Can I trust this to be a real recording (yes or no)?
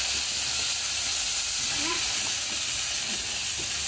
yes